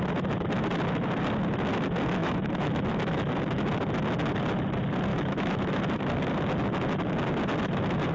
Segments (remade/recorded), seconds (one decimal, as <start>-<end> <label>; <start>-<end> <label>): 0.0-2.2 recorded; 2.2-3.3 remade; 3.3-5.1 recorded; 5.1-5.8 remade; 5.8-8.1 recorded

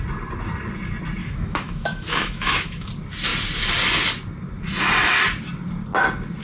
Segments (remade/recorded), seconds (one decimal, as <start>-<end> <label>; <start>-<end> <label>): 0.0-1.2 recorded; 1.2-2.9 remade; 2.9-6.4 recorded